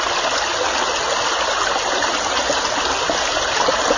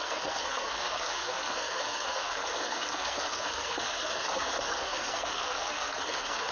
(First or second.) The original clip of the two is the first